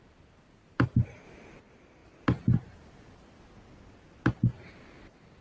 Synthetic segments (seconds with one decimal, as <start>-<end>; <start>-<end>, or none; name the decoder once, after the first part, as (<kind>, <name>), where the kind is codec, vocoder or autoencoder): none